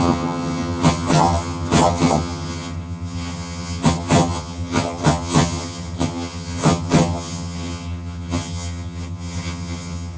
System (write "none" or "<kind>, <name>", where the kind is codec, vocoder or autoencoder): vocoder, HiFi-GAN